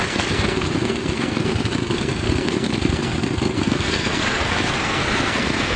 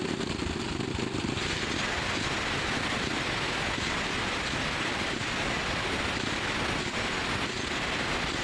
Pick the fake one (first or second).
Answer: first